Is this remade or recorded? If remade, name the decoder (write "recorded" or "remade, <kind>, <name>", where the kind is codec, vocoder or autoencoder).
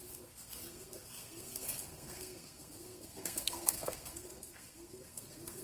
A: remade, codec, SNAC